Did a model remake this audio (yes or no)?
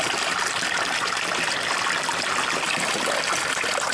no